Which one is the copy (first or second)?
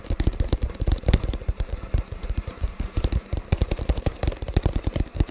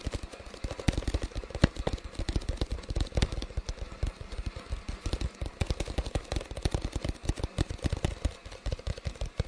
first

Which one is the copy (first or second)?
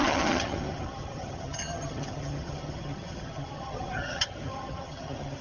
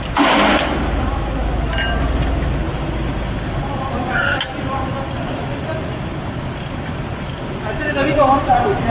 first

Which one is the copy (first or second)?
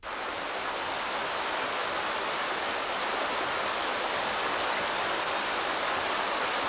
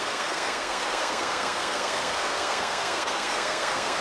second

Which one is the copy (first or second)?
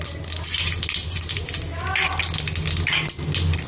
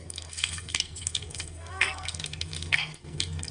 second